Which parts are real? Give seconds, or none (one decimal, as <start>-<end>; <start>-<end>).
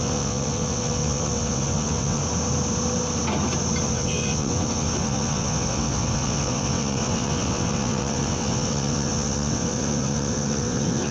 2.2-3.8